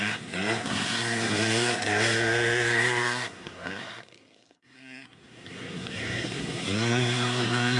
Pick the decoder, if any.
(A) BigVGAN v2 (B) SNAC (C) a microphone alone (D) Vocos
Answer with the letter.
B